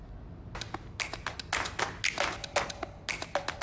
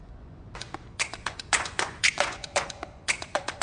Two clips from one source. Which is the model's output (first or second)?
second